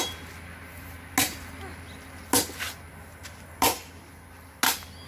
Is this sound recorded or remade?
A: recorded